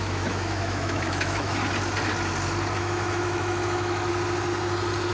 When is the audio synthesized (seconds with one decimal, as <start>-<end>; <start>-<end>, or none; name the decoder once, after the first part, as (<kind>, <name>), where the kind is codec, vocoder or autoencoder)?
0.0-1.6 (autoencoder, DAC-VAE); 2.8-4.1